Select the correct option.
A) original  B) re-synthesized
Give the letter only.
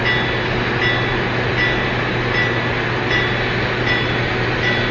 A